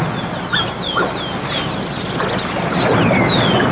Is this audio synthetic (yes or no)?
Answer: no